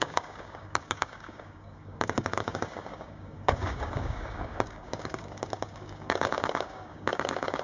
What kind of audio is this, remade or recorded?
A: remade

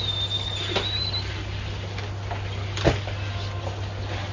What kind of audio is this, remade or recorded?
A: recorded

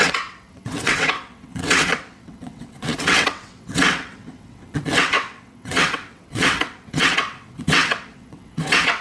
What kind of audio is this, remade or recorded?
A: remade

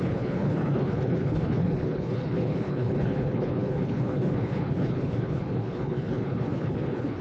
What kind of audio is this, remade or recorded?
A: remade